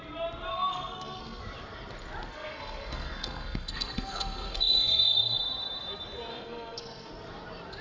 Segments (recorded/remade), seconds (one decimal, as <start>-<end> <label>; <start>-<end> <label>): 0.0-0.5 recorded; 0.5-1.4 remade; 1.4-2.3 recorded; 2.3-5.4 remade; 5.4-6.3 recorded; 6.3-7.1 remade; 7.1-7.8 recorded